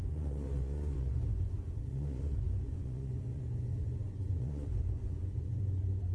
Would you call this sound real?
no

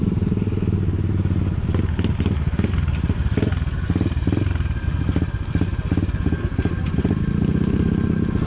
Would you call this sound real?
yes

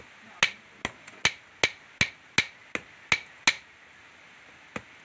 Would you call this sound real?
yes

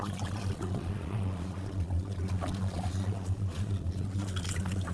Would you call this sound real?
no